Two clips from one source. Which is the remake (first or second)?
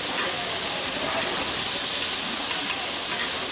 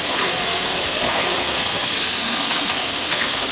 second